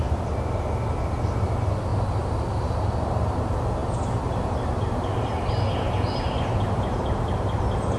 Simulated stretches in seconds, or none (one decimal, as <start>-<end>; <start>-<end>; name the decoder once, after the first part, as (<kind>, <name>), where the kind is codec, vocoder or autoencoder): none